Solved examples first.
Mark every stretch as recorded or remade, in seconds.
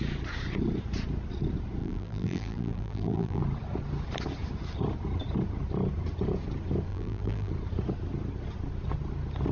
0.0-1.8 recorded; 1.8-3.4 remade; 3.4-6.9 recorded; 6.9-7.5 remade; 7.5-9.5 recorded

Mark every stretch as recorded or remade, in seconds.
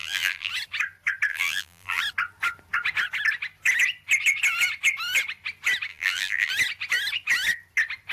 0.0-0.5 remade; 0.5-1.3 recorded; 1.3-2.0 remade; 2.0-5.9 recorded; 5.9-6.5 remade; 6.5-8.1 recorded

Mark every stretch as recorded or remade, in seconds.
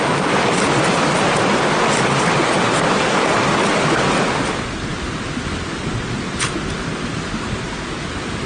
0.0-8.5 recorded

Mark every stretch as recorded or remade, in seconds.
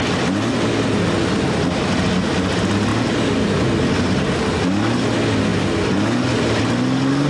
0.0-7.3 recorded